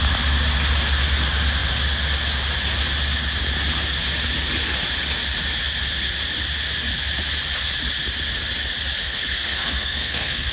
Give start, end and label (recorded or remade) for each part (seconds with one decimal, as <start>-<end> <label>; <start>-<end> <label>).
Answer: 0.0-9.0 recorded; 9.0-10.5 remade